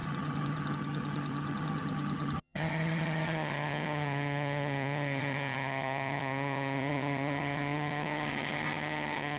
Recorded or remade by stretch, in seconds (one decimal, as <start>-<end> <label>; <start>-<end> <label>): 0.0-9.4 remade